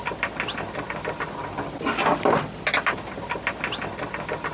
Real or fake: real